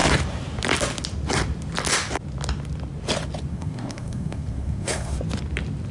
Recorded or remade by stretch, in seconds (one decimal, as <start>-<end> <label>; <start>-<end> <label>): 0.0-3.5 recorded; 3.5-5.2 remade; 5.2-5.9 recorded